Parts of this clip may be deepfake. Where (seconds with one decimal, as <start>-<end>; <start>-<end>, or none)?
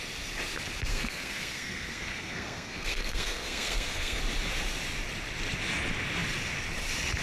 0.9-4.2